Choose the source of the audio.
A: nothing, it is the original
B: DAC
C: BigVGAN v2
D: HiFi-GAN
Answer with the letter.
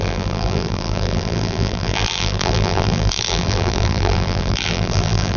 C